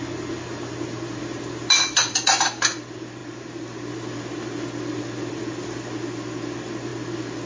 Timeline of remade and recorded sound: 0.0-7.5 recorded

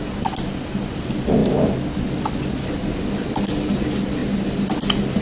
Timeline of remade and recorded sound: 0.0-5.2 recorded

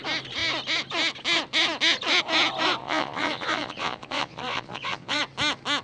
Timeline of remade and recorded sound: 0.0-2.8 recorded; 2.8-5.2 remade; 5.2-5.8 recorded

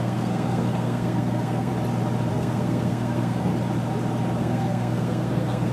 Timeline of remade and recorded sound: 0.0-1.7 remade; 1.7-2.3 recorded; 2.3-3.5 remade; 3.5-4.4 recorded; 4.4-5.7 remade

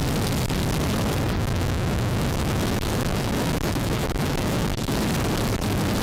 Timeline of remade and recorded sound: 0.0-1.4 recorded; 1.4-5.0 remade; 5.0-6.0 recorded

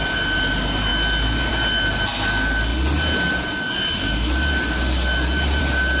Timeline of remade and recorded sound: 0.0-6.0 recorded